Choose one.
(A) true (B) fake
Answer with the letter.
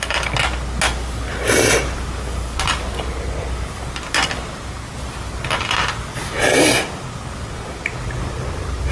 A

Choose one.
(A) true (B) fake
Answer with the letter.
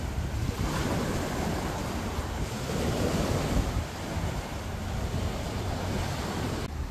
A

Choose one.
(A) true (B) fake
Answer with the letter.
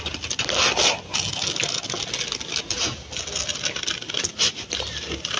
A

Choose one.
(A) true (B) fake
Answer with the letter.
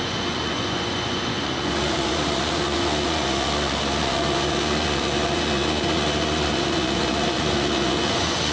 B